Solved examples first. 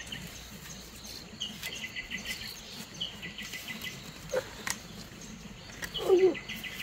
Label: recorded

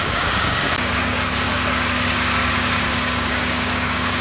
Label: remade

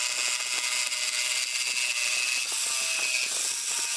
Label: recorded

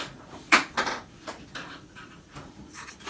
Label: remade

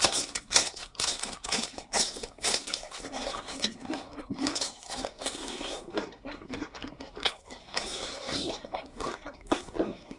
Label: remade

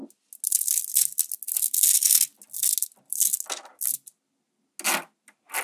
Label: recorded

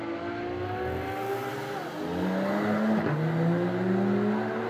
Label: recorded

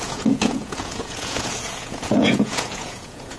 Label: remade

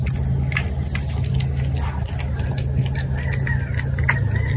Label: recorded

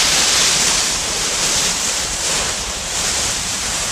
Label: remade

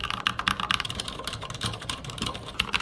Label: remade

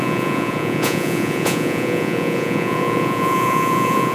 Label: remade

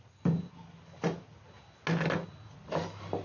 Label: recorded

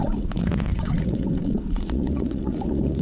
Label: remade